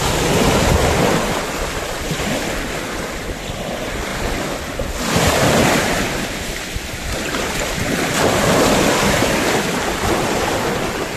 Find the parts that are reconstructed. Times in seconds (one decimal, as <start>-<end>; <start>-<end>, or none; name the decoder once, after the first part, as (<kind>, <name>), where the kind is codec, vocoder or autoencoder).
0.0-4.1 (vocoder, BigVGAN v2); 5.1-11.2